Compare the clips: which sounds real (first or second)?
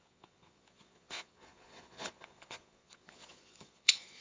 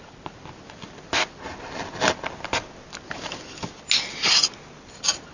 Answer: second